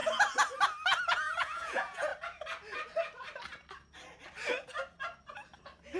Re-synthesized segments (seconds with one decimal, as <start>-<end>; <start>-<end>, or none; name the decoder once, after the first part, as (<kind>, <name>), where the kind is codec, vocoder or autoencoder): 1.0-2.1 (vocoder, Vocos)